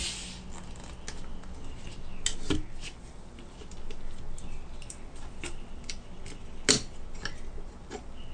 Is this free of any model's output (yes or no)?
yes